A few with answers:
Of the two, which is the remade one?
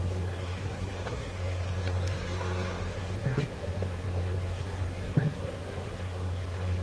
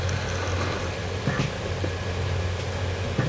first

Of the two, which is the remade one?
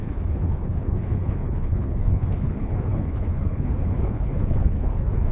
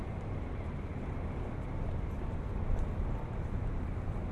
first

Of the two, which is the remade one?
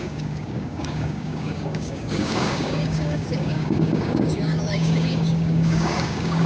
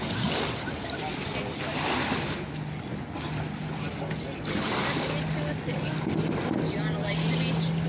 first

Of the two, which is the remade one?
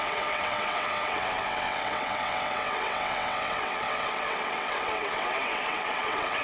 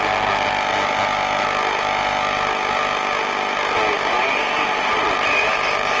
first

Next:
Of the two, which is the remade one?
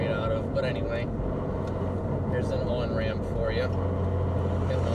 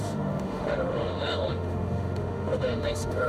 second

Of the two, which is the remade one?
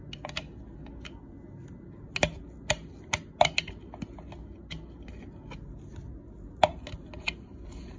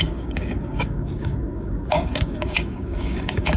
second